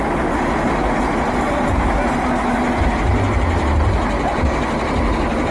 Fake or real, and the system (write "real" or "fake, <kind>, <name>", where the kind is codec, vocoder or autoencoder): real